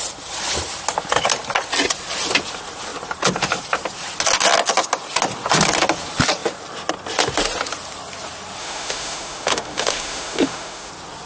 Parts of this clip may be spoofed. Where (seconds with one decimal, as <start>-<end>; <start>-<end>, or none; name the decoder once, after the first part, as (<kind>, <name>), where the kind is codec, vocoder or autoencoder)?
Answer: 8.6-10.9 (autoencoder, DAC-VAE)